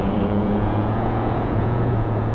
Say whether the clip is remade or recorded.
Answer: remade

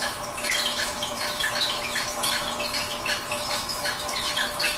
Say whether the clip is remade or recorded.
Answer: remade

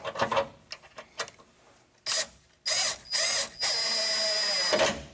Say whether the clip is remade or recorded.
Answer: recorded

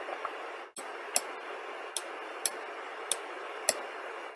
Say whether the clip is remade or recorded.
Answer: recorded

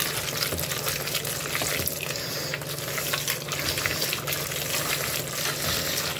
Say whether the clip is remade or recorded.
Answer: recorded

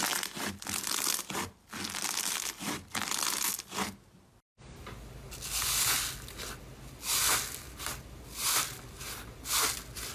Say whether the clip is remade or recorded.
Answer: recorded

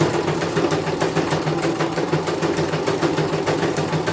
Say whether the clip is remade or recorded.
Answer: recorded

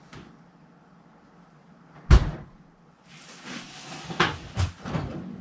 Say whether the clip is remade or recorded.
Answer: remade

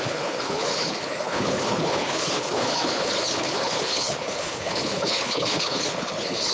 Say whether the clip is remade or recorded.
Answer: remade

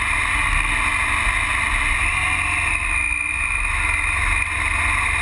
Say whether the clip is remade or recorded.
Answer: recorded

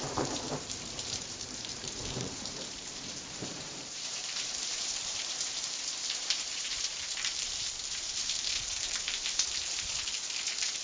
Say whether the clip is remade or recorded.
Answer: remade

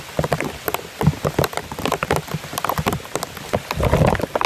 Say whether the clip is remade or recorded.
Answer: recorded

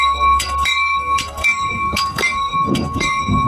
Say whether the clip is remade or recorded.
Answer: remade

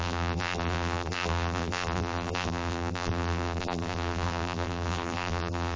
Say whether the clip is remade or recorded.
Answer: remade